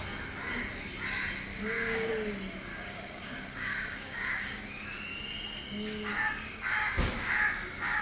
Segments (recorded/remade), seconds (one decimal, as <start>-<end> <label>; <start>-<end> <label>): 0.0-1.5 recorded; 1.5-2.1 remade; 2.1-2.7 recorded; 2.7-4.6 remade; 4.6-6.1 recorded; 6.1-7.1 remade; 7.1-8.0 recorded